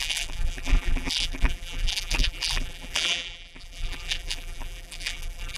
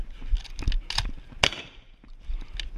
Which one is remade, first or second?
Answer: first